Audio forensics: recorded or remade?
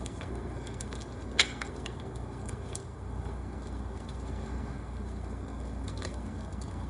remade